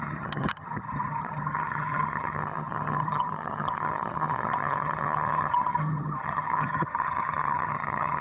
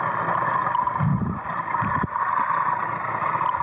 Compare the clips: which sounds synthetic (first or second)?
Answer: first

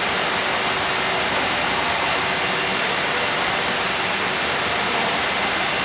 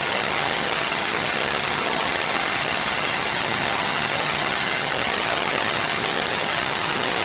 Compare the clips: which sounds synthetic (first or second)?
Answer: second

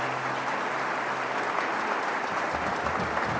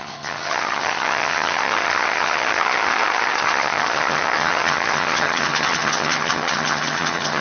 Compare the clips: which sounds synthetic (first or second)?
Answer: second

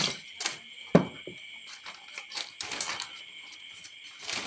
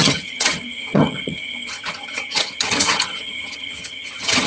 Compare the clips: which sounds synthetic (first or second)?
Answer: second